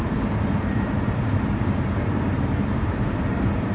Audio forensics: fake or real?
fake